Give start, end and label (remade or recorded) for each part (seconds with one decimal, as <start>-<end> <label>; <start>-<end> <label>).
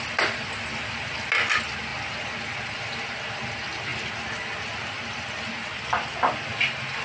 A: 0.0-1.9 recorded; 1.9-3.5 remade; 3.5-7.0 recorded